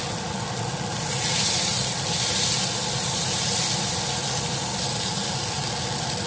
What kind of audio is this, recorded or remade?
recorded